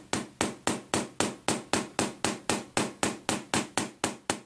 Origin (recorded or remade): recorded